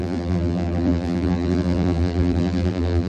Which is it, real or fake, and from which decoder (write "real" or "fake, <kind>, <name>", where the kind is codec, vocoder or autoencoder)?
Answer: fake, vocoder, BigVGAN v2